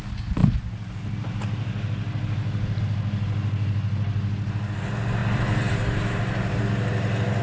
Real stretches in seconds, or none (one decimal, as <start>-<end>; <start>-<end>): 0.0-5.2; 6.6-7.4